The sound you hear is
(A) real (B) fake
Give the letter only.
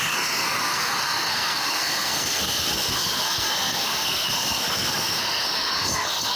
B